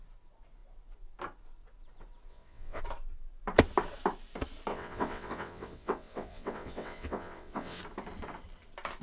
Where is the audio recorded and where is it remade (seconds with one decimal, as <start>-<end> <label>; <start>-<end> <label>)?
0.0-2.3 recorded; 2.3-2.8 remade; 2.8-4.7 recorded; 4.7-7.8 remade; 7.8-9.0 recorded